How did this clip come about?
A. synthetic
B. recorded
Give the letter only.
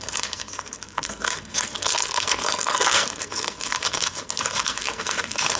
A